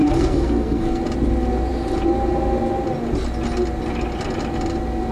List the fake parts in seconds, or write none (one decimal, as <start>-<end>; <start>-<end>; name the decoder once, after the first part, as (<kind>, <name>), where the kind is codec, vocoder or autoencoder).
0.0-1.0 (codec, SNAC)